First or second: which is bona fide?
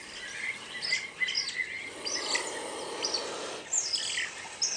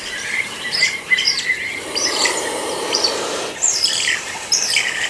first